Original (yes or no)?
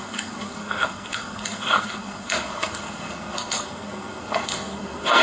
no